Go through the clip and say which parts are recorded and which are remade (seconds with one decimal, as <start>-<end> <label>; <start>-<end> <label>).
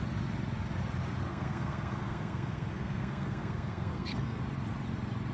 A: 0.0-1.3 recorded; 1.3-4.4 remade; 4.4-5.3 recorded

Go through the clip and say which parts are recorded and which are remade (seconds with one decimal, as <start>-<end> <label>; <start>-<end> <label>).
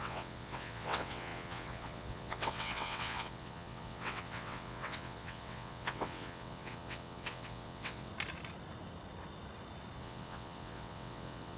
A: 0.0-8.1 remade; 8.1-10.0 recorded; 10.0-11.6 remade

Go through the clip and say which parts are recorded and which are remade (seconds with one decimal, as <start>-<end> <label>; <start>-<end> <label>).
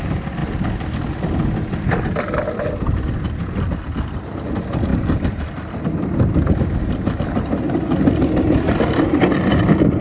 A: 0.0-4.9 recorded; 4.9-7.2 remade; 7.2-10.0 recorded